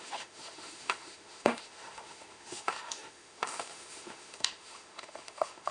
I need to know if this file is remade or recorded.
remade